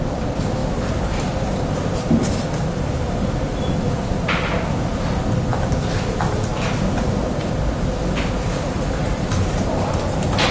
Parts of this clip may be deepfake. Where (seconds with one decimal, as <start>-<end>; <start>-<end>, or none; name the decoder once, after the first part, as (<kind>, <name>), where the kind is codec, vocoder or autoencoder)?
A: none